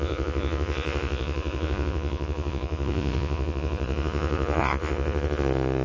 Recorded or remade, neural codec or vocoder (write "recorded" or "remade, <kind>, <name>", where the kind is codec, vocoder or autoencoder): remade, vocoder, Vocos